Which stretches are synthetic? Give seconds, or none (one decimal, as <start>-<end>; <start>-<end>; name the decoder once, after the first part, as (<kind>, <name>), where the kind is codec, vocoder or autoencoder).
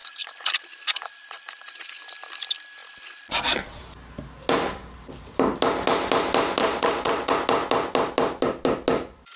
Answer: 0.0-2.0 (vocoder, Vocos); 2.8-3.8; 6.6-7.3